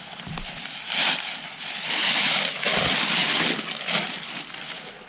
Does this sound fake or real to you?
real